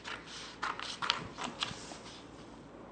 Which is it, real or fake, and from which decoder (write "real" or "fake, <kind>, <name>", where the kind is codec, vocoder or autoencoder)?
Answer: real